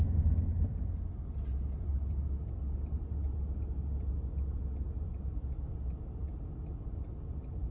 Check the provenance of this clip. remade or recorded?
recorded